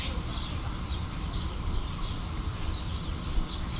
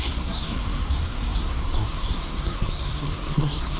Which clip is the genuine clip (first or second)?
first